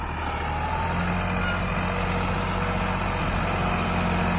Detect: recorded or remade recorded